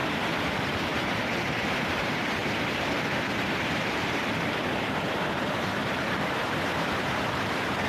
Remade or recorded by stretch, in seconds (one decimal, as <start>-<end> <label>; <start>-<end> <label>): 0.0-7.9 remade